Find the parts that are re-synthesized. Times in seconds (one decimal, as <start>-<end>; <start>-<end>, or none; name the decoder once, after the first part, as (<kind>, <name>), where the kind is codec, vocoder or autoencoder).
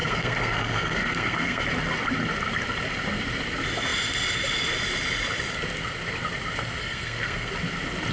0.0-1.7 (codec, SNAC); 6.8-7.5